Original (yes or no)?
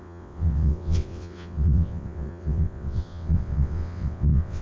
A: no